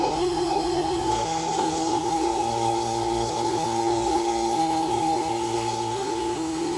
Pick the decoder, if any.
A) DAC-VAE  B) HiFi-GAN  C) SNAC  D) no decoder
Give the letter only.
C